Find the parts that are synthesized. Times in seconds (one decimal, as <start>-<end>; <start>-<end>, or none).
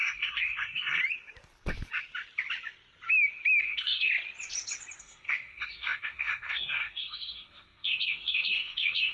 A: 0.0-1.0; 3.6-4.1; 5.0-9.1